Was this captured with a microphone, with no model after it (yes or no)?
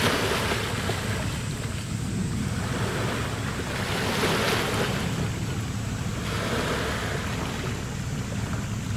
yes